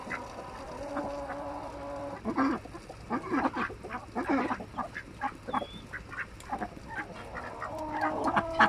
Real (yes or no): yes